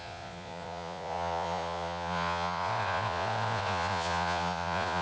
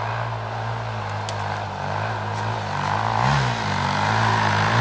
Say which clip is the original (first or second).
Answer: second